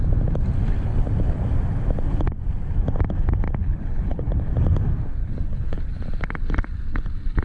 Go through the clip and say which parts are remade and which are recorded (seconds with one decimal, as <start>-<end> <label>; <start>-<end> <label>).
0.0-3.6 recorded; 3.6-4.5 remade; 4.5-5.2 recorded; 5.2-5.9 remade; 5.9-7.4 recorded